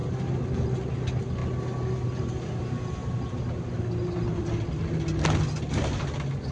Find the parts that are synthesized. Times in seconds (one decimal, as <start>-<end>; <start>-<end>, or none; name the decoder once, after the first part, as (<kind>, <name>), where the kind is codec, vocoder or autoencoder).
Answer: none